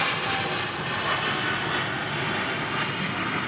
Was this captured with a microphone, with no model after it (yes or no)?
yes